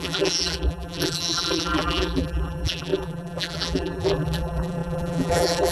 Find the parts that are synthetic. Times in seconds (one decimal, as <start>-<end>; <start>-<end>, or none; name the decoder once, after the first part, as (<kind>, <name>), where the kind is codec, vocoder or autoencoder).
0.0-5.7 (vocoder, BigVGAN v2)